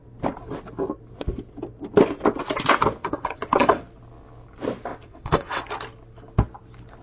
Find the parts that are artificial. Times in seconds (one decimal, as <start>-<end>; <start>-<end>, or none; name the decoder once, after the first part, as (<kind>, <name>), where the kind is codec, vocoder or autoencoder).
3.0-3.8 (vocoder, WaveNeXt); 4.9-5.6